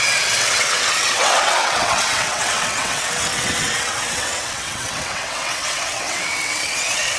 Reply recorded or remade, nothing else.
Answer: remade